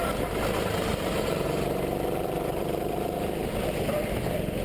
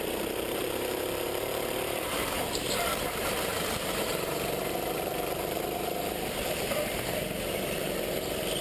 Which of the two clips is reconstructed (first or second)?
second